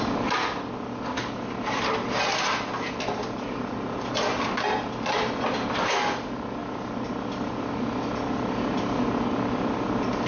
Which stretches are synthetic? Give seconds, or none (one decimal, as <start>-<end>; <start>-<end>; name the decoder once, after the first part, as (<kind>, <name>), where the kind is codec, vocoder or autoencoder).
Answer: none